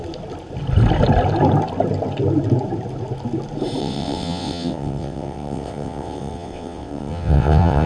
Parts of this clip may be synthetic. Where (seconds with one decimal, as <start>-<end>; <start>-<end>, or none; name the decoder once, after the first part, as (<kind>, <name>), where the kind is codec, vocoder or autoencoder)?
3.8-7.9 (vocoder, WaveNeXt)